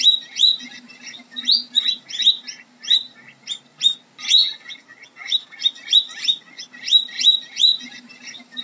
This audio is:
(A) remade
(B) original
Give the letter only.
B